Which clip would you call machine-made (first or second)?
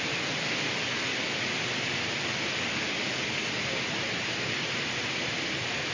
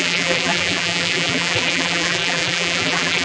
second